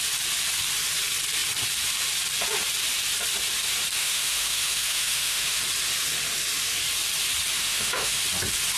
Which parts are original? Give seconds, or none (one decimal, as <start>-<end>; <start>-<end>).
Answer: 0.0-4.0; 5.6-7.6; 8.2-8.8